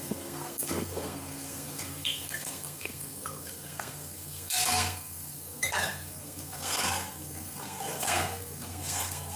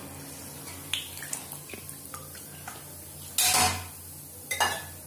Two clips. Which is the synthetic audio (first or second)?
first